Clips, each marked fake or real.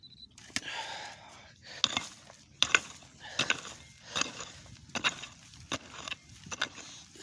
real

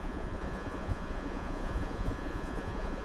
fake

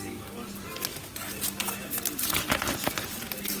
real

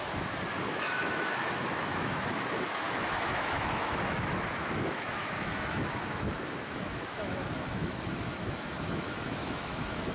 fake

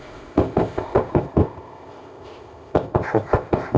fake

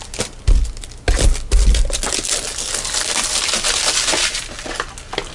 real